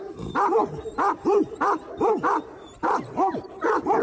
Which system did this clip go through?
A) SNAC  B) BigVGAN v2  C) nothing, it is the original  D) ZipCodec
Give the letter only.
B